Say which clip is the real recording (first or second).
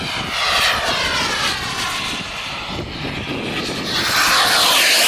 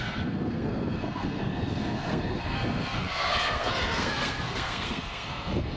first